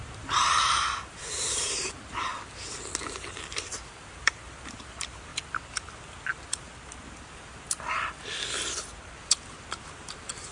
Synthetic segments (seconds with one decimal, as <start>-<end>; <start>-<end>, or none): 0.0-2.3; 3.3-5.3; 9.8-10.5